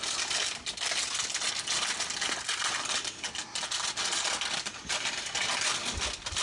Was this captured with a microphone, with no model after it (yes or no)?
yes